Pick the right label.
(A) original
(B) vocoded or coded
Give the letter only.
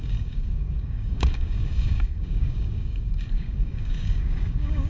B